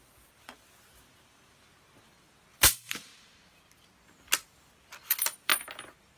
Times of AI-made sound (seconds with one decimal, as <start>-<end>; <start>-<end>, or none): 0.0-3.1; 4.7-5.5